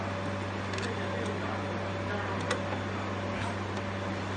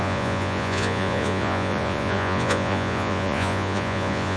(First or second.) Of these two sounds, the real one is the first